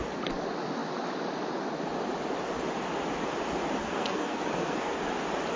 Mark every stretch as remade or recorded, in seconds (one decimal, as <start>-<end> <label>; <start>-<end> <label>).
0.0-3.8 recorded; 3.8-5.0 remade; 5.0-5.6 recorded